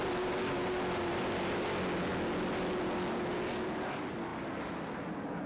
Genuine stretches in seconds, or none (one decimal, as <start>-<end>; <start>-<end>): 0.0-5.5